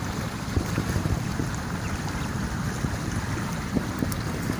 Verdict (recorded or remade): recorded